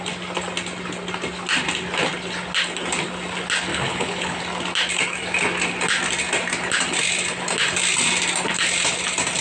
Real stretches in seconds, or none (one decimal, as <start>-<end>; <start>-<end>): 0.0-3.7; 4.4-9.4